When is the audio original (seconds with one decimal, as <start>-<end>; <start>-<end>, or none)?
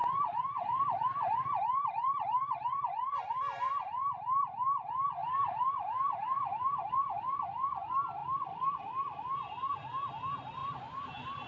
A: 3.6-5.2; 6.9-11.5